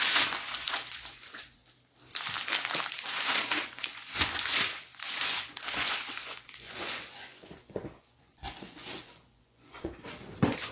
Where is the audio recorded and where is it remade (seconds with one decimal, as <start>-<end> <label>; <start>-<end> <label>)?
0.0-1.6 remade; 1.6-2.9 recorded; 2.9-10.7 remade